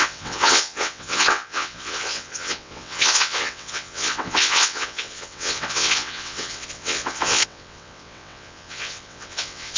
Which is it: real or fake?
fake